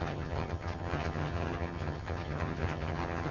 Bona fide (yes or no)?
no